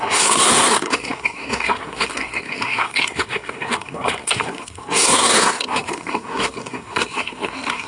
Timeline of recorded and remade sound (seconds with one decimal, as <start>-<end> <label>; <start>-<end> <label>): 0.0-7.9 remade